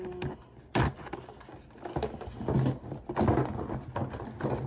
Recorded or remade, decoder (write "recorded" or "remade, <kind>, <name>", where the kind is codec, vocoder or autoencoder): recorded